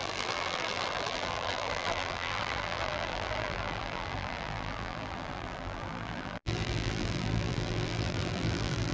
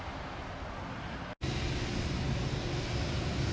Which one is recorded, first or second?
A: second